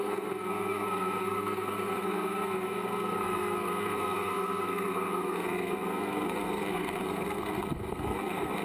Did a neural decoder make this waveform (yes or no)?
yes